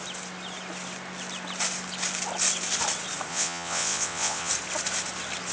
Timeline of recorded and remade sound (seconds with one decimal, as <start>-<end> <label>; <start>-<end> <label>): 0.0-3.3 recorded; 3.3-4.5 remade; 4.5-5.5 recorded